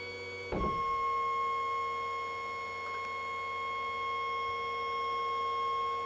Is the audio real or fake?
real